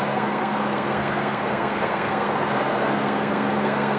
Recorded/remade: remade